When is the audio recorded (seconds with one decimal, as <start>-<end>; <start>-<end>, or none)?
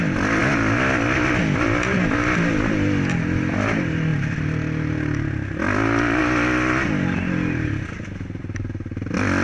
0.0-9.4